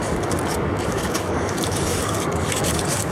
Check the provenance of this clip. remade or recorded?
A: remade